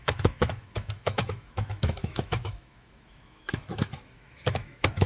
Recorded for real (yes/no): no